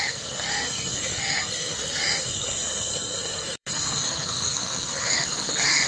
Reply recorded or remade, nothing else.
remade